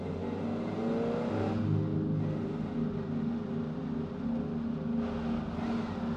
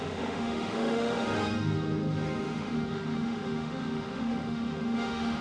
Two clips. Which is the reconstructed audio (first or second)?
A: second